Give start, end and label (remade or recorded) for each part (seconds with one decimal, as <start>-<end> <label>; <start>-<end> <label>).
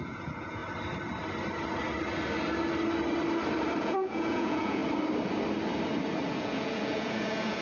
0.0-0.6 remade; 0.6-3.8 recorded; 3.8-4.8 remade; 4.8-6.3 recorded; 6.3-7.6 remade